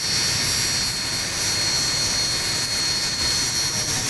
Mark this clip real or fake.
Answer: real